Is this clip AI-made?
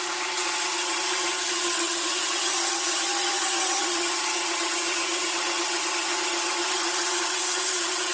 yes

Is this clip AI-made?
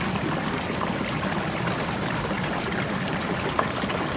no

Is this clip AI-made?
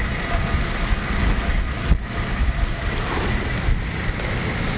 no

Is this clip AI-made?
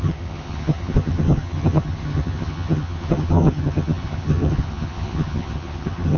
yes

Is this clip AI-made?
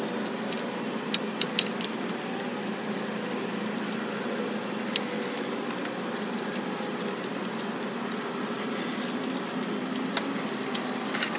no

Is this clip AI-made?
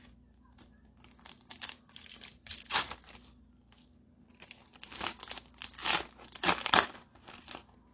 no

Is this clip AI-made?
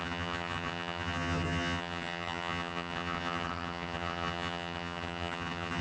yes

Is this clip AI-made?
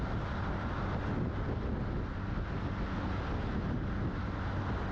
no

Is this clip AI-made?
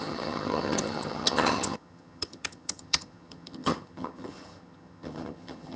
yes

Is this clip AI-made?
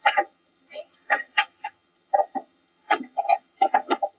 yes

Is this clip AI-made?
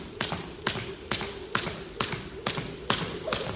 no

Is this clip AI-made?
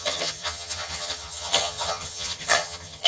yes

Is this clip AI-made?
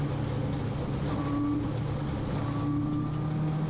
no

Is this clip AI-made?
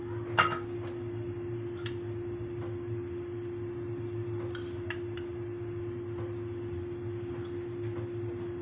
no